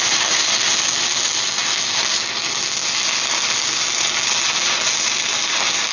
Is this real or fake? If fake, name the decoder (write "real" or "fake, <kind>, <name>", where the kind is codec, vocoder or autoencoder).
real